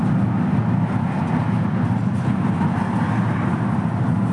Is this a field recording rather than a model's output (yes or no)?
yes